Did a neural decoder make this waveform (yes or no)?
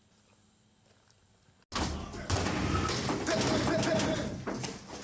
no